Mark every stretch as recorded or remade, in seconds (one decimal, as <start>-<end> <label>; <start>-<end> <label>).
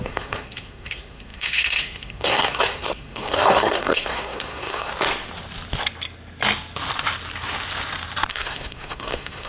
0.0-4.9 remade; 4.9-8.3 recorded; 8.3-9.5 remade